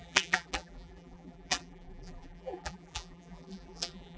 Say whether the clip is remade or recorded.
remade